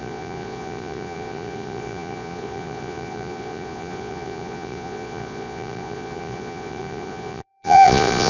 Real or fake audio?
fake